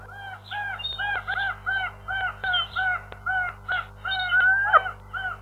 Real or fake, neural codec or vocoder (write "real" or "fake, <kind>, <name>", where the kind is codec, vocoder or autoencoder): real